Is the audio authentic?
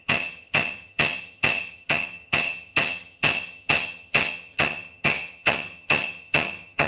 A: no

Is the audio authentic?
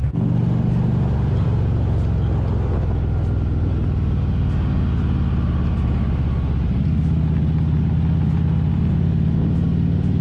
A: yes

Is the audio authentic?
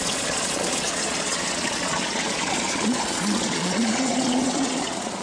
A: no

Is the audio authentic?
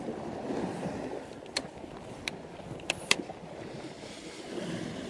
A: yes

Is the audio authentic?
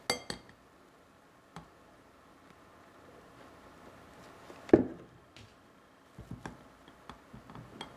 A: yes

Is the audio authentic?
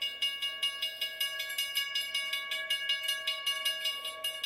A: yes